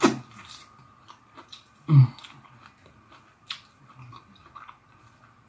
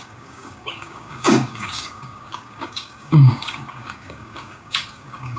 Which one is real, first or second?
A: first